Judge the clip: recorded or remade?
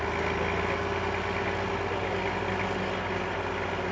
recorded